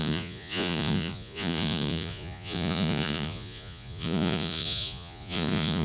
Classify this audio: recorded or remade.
remade